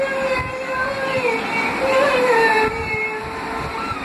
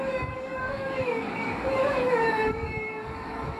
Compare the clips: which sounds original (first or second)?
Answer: first